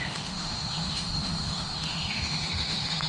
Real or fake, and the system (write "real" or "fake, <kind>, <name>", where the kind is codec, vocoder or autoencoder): fake, autoencoder, DAC-VAE